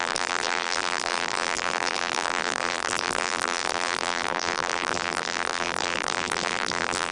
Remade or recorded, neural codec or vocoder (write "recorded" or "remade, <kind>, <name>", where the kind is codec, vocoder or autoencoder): remade, vocoder, BigVGAN v2